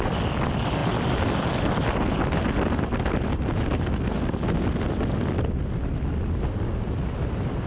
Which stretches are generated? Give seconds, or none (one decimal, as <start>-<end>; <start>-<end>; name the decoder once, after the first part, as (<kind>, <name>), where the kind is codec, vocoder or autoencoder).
none